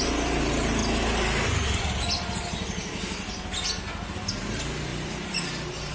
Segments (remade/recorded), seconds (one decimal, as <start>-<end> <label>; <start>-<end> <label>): 0.0-0.8 remade; 0.8-4.3 recorded; 4.3-5.9 remade